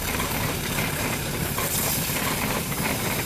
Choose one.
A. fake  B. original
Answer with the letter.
A